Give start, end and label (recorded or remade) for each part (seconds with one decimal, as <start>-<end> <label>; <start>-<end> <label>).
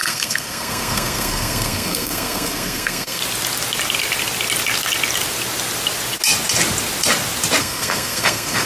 0.0-3.2 remade; 3.2-7.6 recorded; 7.6-8.7 remade